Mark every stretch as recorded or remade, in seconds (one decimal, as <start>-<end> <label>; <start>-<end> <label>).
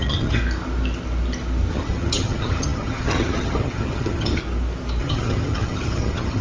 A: 0.0-0.4 remade; 0.4-1.7 recorded; 1.7-4.4 remade; 4.4-5.0 recorded; 5.0-6.4 remade